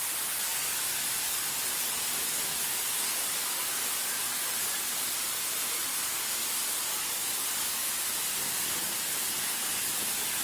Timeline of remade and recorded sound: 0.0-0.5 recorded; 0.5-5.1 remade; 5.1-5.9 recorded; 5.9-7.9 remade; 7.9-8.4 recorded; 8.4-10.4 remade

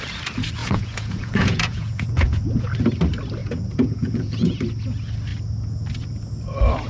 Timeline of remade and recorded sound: 0.0-0.6 recorded; 0.6-2.7 remade; 2.7-3.4 recorded; 3.4-4.6 remade; 4.6-6.9 recorded

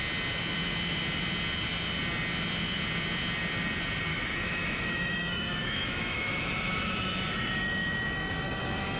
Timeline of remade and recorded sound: 0.0-4.1 recorded; 4.1-9.0 remade

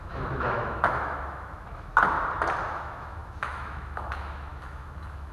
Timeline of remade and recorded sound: 0.0-1.9 remade; 1.9-2.7 recorded; 2.7-5.3 remade